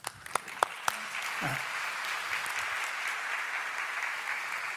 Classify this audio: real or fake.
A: real